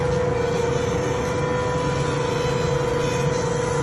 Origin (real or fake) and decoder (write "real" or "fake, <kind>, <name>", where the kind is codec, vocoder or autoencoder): real